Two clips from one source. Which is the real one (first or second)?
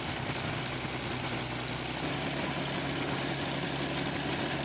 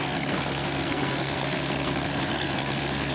first